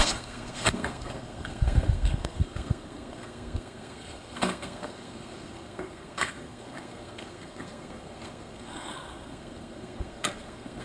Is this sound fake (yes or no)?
yes